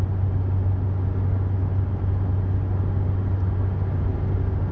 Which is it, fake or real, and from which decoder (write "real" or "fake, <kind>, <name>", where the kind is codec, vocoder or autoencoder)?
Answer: real